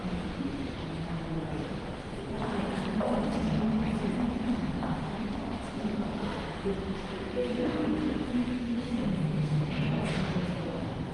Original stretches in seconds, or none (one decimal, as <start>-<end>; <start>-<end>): 0.0-7.0; 9.8-11.1